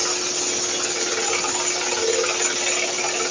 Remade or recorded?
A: recorded